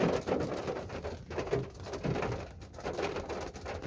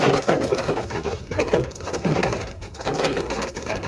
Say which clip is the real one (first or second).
first